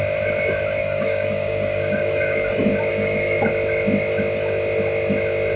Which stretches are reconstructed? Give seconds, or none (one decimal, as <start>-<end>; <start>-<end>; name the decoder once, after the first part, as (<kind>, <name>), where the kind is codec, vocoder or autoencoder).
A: 0.8-2.5 (codec, DAC); 2.9-3.5